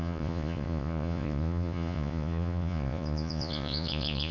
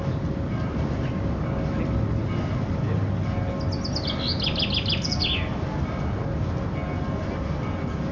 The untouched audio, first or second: second